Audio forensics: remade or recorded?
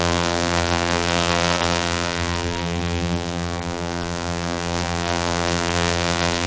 remade